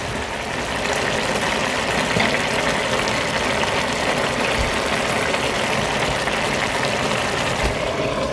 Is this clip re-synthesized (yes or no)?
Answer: no